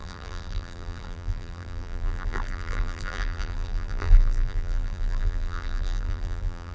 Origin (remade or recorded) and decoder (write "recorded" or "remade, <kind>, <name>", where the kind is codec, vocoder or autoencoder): remade, vocoder, BigVGAN v2